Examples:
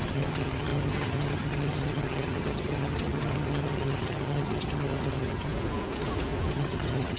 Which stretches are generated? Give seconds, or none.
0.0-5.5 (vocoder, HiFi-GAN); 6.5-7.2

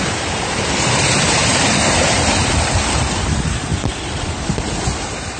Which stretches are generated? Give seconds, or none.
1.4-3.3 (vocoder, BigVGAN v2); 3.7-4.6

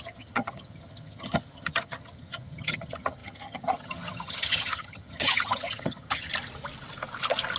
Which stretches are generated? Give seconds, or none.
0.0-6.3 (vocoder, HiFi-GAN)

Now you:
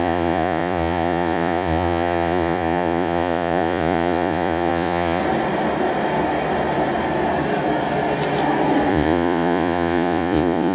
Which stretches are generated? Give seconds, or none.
0.0-5.2 (vocoder, Vocos); 8.9-10.7

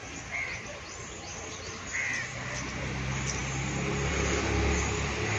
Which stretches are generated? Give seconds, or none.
none

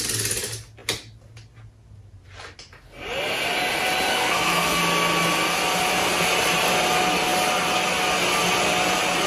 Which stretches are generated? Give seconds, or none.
4.1-4.8 (codec, SNAC)